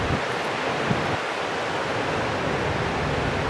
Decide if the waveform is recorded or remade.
recorded